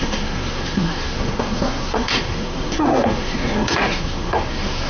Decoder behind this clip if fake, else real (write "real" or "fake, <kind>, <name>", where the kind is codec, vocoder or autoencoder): fake, codec, SNAC